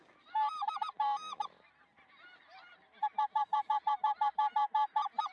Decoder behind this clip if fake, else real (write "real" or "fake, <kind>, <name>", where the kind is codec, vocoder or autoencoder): fake, vocoder, BigVGAN v2